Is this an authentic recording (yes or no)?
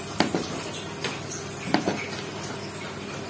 yes